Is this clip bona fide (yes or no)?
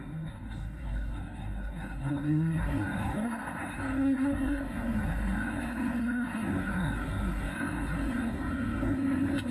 no